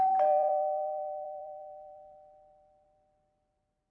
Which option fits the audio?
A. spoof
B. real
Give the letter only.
A